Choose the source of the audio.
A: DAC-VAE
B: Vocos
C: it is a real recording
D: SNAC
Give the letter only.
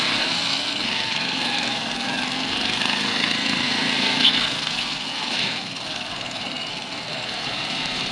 D